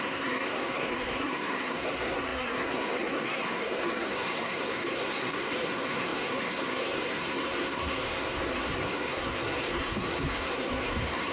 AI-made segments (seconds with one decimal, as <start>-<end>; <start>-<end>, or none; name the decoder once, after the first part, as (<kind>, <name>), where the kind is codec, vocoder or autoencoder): 0.0-11.3 (codec, SNAC)